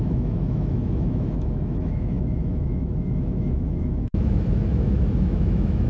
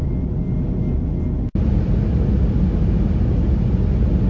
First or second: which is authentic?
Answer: second